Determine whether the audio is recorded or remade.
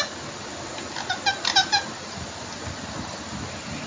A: recorded